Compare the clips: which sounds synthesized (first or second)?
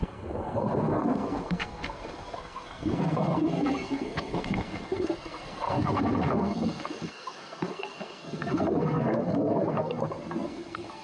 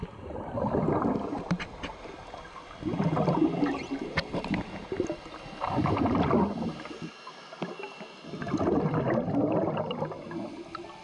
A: first